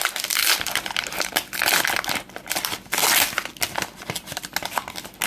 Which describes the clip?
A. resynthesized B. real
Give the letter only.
B